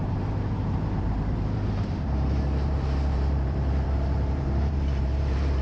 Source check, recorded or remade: remade